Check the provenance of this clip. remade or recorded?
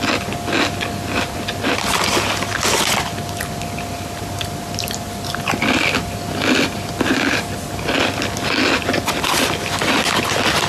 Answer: recorded